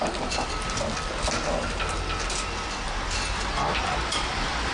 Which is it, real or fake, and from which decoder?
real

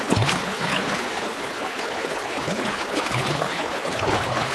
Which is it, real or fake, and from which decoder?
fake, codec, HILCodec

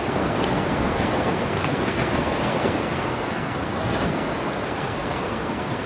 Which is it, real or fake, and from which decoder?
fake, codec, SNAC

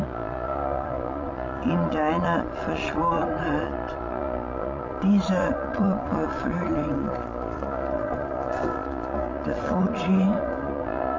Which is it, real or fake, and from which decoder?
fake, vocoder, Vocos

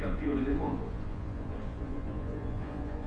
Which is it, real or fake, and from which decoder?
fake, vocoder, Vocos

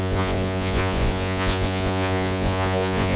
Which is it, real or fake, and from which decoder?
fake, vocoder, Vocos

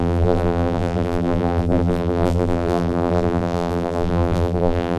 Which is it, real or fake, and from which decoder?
fake, vocoder, BigVGAN v2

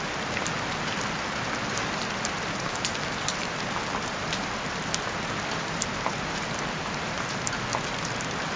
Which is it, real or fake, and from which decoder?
real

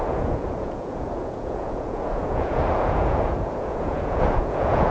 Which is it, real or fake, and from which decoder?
fake, vocoder, Vocos